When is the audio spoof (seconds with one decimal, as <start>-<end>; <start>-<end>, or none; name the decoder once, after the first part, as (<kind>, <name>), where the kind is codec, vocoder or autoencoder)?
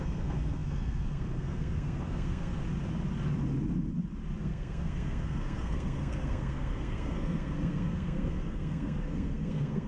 0.0-2.6 (codec, SNAC); 4.4-9.9